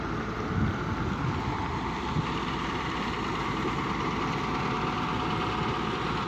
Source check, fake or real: real